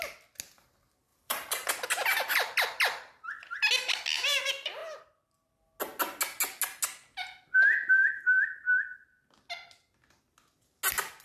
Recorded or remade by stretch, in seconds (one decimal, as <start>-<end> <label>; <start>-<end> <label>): 0.0-1.1 recorded; 1.1-1.7 remade; 1.7-11.2 recorded